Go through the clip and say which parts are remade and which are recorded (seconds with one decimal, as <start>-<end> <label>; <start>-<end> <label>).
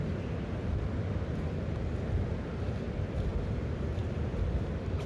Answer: 0.0-5.1 recorded